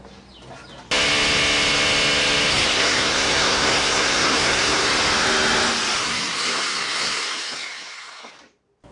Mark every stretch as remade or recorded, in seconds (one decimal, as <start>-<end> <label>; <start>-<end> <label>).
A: 0.0-2.5 recorded; 2.5-4.9 remade; 4.9-6.0 recorded; 6.0-8.3 remade; 8.3-8.9 recorded